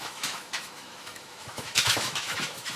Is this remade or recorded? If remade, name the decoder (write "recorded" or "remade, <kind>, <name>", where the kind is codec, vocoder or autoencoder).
remade, autoencoder, DAC-VAE